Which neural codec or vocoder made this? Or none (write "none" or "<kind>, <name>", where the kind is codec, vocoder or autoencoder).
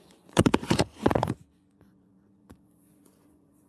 vocoder, Vocos